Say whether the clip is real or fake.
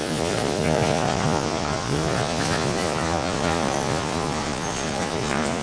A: fake